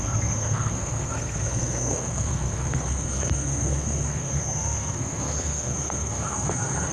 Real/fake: fake